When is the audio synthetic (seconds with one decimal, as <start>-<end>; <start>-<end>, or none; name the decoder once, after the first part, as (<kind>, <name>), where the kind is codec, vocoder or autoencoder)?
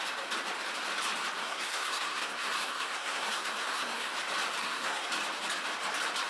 1.4-4.1 (codec, SNAC); 4.6-5.1